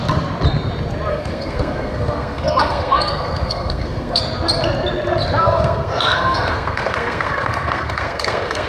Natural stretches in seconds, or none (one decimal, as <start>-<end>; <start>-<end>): 0.0-1.1; 4.2-5.4